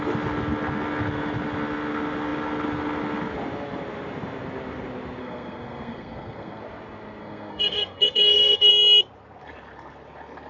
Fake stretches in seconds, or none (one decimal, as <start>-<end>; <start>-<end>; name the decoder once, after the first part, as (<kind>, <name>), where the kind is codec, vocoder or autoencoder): 5.2-6.6 (codec, SNAC); 7.2-8.7